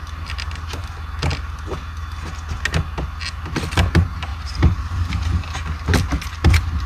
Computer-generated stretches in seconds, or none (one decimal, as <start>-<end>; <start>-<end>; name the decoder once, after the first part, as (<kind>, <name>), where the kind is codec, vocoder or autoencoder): none